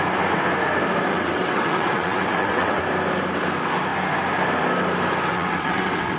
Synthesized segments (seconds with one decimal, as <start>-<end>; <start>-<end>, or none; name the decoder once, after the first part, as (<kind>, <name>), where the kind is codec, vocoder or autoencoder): 1.1-2.8 (vocoder, WaveNeXt); 5.3-6.2